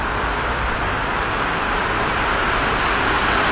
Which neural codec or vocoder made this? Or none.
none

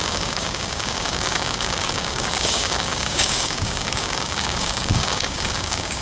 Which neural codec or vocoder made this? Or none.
codec, DAC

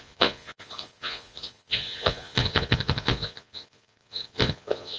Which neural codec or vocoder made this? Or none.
vocoder, Vocos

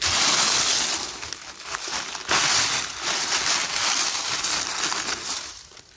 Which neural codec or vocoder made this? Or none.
none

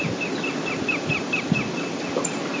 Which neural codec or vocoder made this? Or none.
none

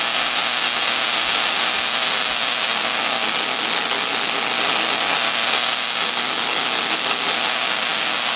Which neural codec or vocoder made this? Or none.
none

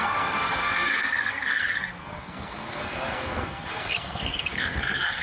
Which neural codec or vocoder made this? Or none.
codec, SNAC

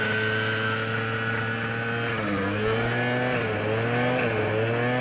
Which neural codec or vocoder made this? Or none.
none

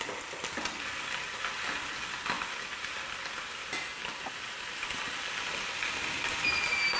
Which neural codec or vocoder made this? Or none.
none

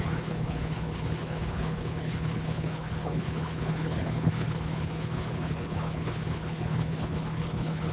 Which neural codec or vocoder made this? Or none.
codec, HILCodec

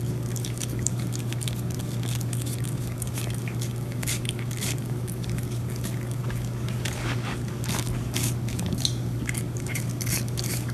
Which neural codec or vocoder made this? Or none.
codec, DAC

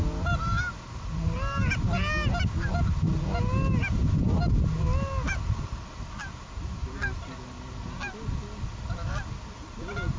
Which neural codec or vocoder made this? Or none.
none